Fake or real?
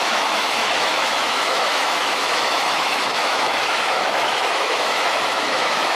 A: fake